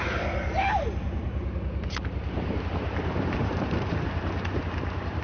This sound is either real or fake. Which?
fake